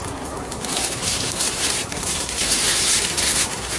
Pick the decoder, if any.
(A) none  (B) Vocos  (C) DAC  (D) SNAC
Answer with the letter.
D